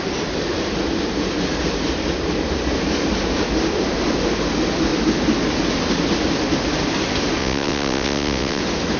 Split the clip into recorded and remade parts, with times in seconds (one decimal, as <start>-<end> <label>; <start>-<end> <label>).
0.0-7.4 recorded; 7.4-8.6 remade; 8.6-9.0 recorded